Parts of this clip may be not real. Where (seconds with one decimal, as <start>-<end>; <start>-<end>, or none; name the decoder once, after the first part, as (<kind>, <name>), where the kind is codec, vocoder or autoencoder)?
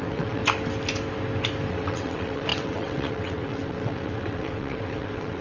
0.0-0.4 (vocoder, WaveNeXt); 1.7-5.4